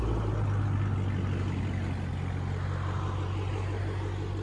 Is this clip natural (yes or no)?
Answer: yes